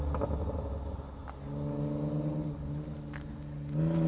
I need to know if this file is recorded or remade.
recorded